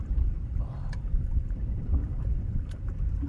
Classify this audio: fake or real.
fake